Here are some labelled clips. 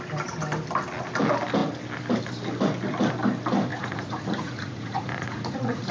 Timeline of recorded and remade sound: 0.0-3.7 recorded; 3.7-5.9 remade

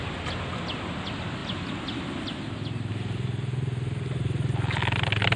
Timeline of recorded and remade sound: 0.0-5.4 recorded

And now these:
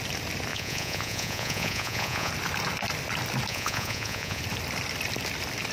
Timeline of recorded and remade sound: 0.0-0.5 recorded; 0.5-2.3 remade; 2.3-3.5 recorded; 3.5-4.4 remade; 4.4-5.7 recorded

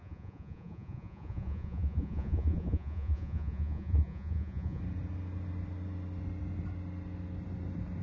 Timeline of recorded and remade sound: 0.0-4.8 remade; 4.8-8.0 recorded